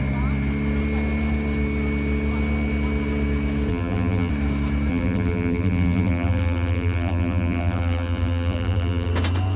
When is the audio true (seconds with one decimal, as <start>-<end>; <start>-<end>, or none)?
0.0-3.7; 4.3-4.9; 9.1-9.6